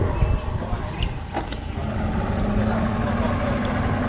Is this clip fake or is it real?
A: real